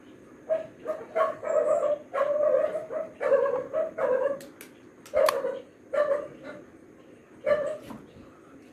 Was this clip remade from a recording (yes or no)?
no